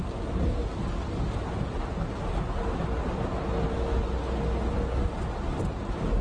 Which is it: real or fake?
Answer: real